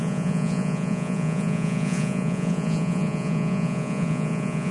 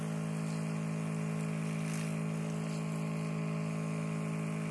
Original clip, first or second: second